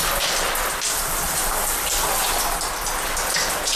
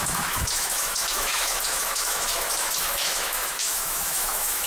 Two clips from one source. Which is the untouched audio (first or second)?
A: first